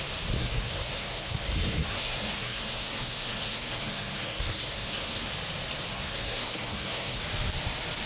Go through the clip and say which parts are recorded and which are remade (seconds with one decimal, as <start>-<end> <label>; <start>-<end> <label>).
0.0-0.4 recorded; 0.4-5.3 remade; 5.3-5.9 recorded; 5.9-7.2 remade; 7.2-8.1 recorded